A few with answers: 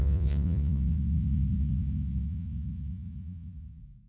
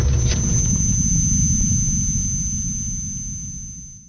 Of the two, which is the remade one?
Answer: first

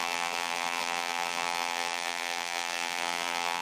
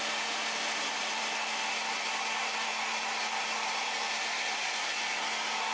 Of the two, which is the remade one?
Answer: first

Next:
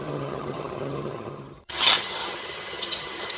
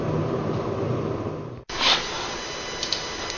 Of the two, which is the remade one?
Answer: first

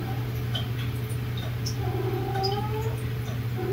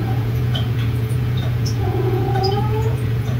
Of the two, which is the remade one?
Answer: second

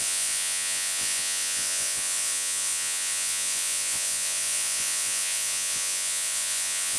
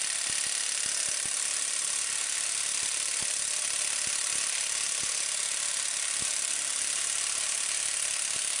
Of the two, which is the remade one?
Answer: first